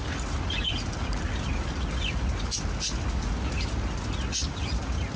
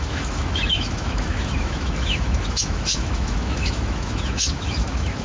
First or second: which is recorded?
first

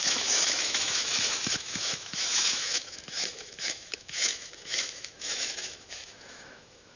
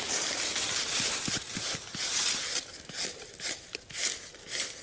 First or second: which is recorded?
second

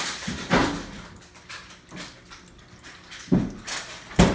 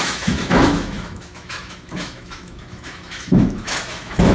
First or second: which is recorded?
first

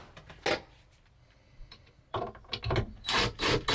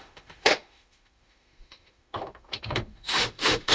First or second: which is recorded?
first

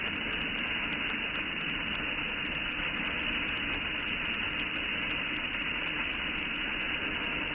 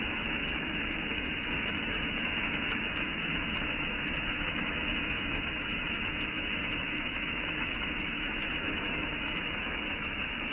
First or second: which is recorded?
first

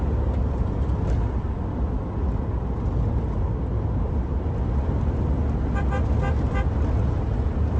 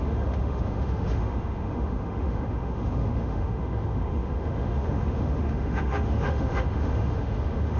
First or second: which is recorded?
first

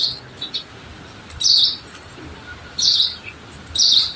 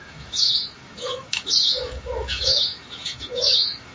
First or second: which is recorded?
first